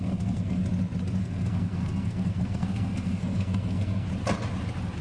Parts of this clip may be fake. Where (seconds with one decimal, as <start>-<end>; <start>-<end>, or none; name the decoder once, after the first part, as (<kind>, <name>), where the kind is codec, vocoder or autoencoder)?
0.0-0.6 (codec, SNAC); 1.2-4.1